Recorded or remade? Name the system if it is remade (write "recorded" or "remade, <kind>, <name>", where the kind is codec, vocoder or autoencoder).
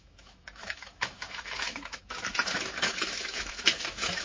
remade, autoencoder, DAC-VAE